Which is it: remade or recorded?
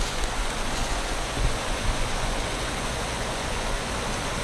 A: remade